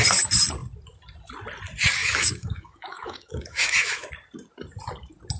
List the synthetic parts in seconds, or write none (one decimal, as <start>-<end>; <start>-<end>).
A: 2.0-4.1